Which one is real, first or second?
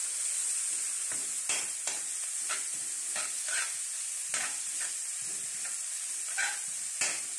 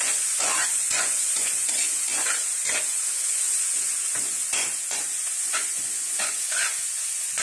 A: first